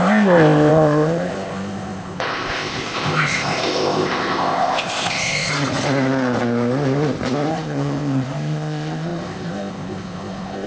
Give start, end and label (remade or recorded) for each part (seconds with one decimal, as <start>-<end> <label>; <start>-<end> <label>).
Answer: 0.0-5.5 remade; 5.5-7.5 recorded; 7.5-10.7 remade